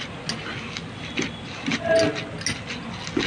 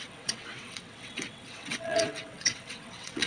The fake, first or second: second